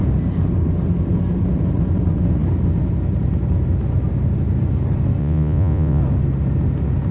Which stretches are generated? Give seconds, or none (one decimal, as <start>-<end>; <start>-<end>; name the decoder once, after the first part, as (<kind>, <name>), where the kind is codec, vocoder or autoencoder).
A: 5.2-6.0 (vocoder, Vocos)